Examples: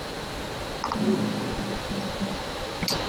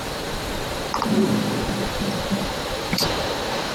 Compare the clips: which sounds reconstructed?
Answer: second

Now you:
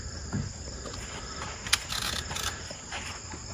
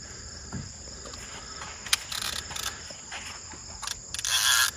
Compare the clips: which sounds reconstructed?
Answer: first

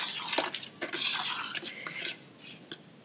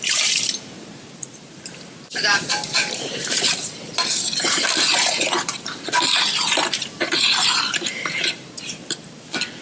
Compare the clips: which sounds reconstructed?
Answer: second